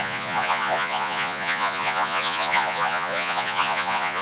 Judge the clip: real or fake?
fake